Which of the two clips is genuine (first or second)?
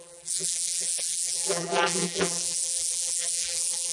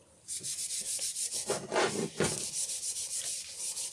second